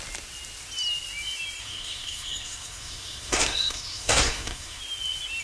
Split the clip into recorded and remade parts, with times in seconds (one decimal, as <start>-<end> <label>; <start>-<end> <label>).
0.0-1.6 recorded; 1.6-4.8 remade; 4.8-5.4 recorded